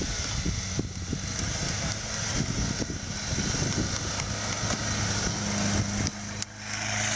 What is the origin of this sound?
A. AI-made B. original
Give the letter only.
B